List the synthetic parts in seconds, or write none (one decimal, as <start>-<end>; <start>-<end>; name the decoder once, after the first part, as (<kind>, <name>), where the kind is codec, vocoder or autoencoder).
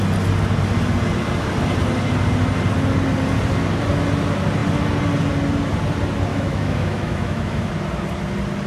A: 6.3-7.7 (autoencoder, DAC-VAE)